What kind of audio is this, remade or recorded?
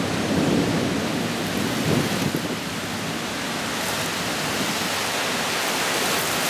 recorded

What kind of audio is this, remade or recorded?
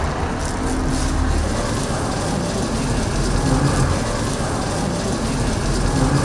recorded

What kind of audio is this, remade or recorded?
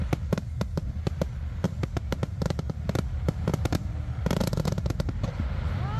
recorded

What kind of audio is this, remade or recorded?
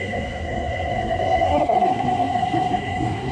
remade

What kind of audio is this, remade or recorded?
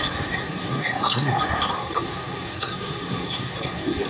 remade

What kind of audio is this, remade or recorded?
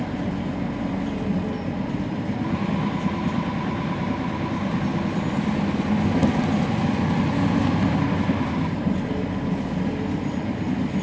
recorded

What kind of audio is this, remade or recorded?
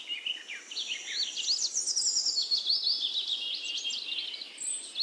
recorded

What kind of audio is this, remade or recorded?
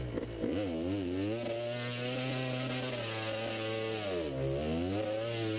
recorded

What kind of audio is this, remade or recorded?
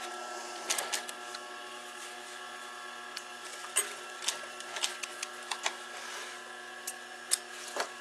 recorded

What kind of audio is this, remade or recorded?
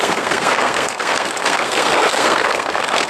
remade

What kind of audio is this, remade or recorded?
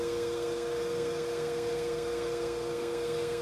remade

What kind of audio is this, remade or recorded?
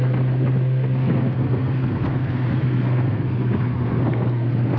remade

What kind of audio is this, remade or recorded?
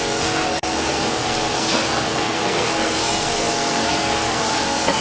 remade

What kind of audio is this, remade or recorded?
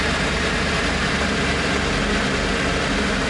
recorded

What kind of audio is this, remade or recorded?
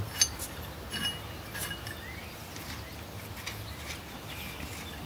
recorded